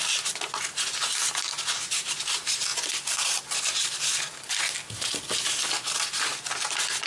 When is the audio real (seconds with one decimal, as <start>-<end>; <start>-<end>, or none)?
0.0-7.1